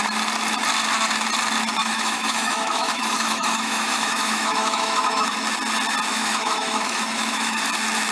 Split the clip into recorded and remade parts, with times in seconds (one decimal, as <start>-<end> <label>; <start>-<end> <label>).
0.0-1.8 recorded; 1.8-5.3 remade; 5.3-6.1 recorded; 6.1-7.6 remade; 7.6-8.1 recorded